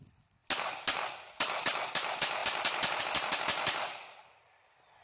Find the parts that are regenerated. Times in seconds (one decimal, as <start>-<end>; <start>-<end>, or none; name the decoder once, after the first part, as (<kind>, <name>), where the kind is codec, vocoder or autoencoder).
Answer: none